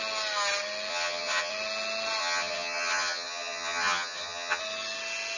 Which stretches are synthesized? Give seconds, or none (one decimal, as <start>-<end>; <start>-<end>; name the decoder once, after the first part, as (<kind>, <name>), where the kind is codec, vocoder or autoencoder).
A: 0.9-1.5 (vocoder, HiFi-GAN); 2.2-4.6